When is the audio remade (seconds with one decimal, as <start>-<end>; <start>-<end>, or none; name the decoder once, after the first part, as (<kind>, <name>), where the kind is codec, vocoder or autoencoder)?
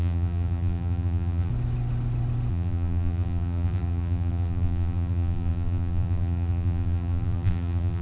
0.0-1.5 (vocoder, BigVGAN v2); 2.5-8.0